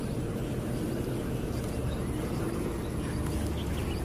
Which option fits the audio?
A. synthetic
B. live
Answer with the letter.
B